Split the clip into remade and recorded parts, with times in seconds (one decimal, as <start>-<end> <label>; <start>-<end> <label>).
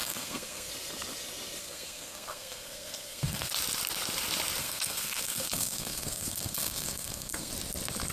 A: 0.0-0.7 remade; 0.7-1.6 recorded; 1.6-3.5 remade; 3.5-4.6 recorded; 4.6-7.5 remade; 7.5-8.1 recorded